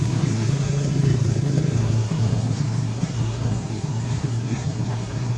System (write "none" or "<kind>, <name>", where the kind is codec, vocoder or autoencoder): codec, SNAC